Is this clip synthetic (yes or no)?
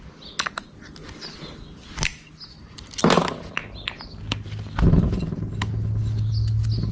no